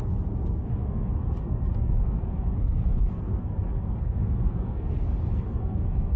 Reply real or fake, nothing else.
fake